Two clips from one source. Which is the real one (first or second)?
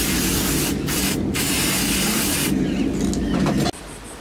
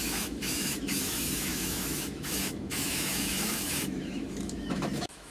first